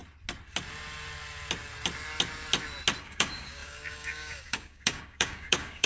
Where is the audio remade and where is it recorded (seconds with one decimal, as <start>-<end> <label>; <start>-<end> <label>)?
0.0-3.0 recorded; 3.0-5.9 remade